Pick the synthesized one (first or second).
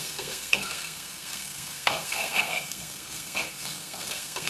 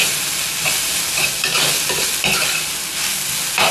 first